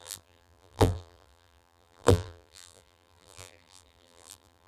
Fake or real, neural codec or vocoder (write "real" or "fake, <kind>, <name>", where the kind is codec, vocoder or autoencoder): fake, vocoder, BigVGAN v2